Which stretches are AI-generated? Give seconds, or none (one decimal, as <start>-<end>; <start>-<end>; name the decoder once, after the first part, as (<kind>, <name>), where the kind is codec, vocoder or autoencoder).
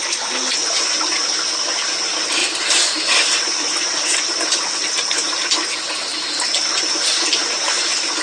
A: 2.4-3.8 (vocoder, BigVGAN v2); 6.1-7.4